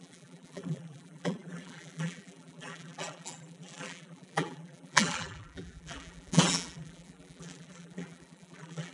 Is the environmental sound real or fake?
fake